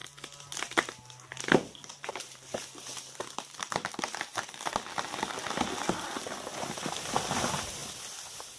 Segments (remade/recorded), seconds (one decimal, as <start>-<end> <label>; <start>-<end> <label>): 0.0-2.1 recorded; 2.1-7.8 remade; 7.8-8.6 recorded